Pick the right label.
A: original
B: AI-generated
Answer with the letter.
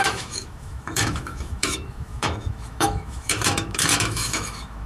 B